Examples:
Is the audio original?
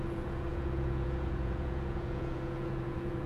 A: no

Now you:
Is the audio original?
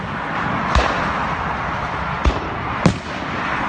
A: yes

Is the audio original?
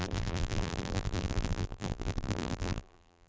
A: no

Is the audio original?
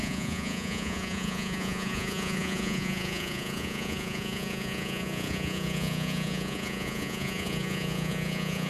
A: no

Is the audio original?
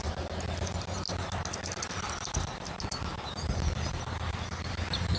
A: yes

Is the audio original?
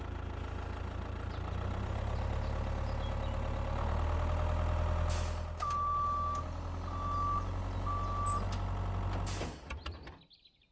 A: yes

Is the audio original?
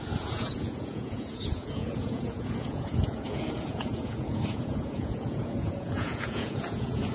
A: no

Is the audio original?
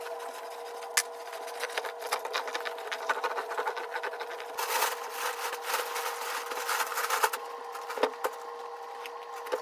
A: yes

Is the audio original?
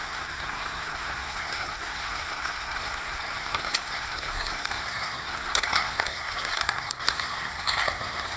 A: no